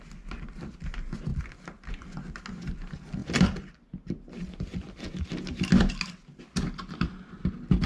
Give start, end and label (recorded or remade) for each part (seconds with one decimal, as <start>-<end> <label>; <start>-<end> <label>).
0.0-7.9 recorded